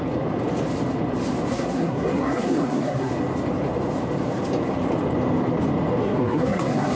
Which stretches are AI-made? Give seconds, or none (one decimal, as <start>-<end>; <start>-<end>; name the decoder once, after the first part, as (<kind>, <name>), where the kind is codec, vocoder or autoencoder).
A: 1.5-3.1 (codec, SNAC); 6.0-7.0